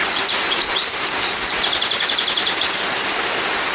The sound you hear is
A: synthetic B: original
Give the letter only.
A